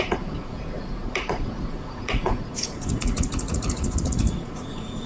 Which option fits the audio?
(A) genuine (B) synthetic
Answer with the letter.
B